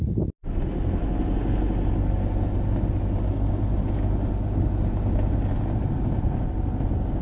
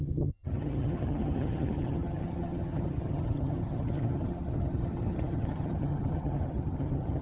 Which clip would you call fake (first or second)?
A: second